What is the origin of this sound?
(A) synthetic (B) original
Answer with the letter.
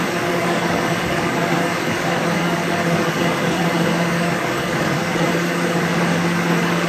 A